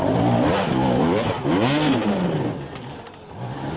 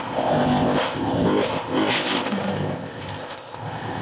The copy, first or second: second